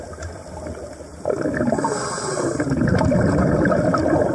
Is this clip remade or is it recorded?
recorded